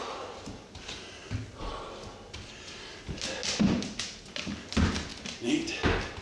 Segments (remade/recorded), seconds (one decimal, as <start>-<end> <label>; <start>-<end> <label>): 0.0-6.2 recorded